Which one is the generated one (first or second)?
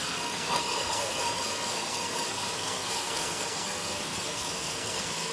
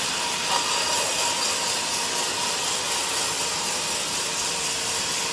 first